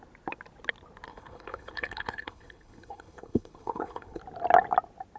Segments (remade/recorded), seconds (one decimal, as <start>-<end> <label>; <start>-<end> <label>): 0.0-1.1 recorded; 1.1-4.2 remade; 4.2-5.2 recorded